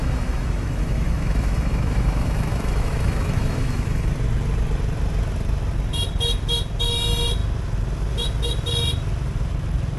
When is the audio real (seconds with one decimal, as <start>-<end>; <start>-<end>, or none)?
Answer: 4.1-10.0